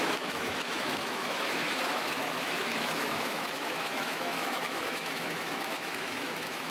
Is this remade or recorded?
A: remade